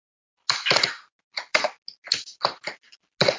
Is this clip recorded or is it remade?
recorded